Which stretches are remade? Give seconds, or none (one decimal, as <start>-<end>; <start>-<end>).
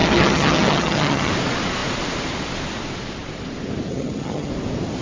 0.0-1.3; 3.9-4.5